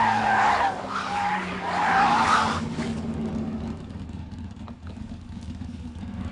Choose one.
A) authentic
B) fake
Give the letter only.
B